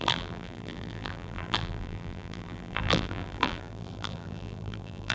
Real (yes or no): no